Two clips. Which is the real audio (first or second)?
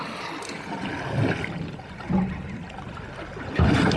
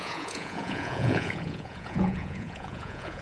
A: first